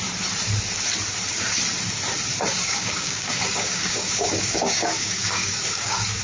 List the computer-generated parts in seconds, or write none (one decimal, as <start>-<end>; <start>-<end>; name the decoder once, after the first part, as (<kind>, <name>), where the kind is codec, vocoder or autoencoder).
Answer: 2.5-6.2 (codec, DAC)